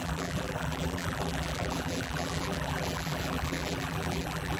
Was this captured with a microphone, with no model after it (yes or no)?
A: no